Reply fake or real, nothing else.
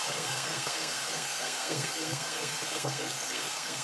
fake